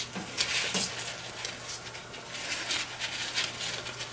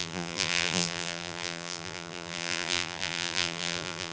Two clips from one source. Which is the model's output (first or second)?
second